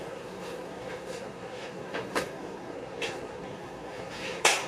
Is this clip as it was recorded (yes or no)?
no